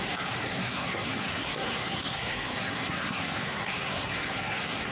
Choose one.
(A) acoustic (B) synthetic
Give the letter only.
B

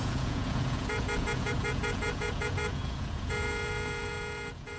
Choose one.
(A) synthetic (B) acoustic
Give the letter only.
A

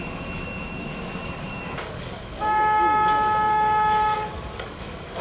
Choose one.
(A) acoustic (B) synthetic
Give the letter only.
B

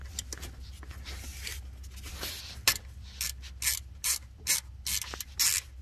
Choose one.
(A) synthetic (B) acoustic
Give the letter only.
B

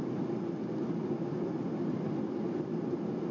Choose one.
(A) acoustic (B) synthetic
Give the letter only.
A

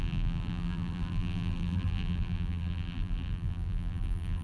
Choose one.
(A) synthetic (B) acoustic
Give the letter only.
A